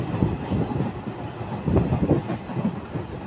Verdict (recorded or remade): recorded